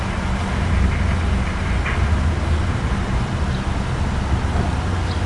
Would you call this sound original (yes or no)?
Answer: yes